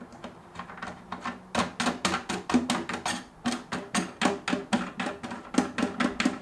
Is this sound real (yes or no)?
yes